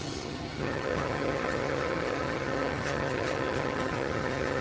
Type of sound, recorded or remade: remade